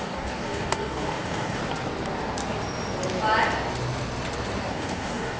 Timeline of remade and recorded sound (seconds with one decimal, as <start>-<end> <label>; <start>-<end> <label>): 0.0-1.6 remade; 1.6-4.7 recorded; 4.7-5.4 remade

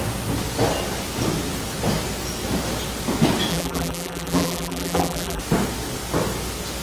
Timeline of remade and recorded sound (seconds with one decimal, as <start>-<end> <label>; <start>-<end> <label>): 0.0-3.5 recorded; 3.5-5.4 remade; 5.4-6.8 recorded

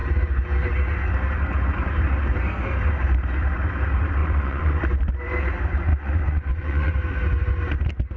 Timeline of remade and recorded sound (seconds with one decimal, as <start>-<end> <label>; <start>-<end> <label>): 0.0-4.2 recorded; 4.2-4.8 remade; 4.8-5.9 recorded; 5.9-6.9 remade; 6.9-8.2 recorded

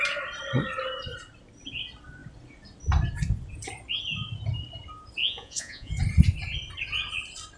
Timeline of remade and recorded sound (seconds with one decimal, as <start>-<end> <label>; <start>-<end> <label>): 0.0-5.2 recorded; 5.2-5.9 remade; 5.9-7.6 recorded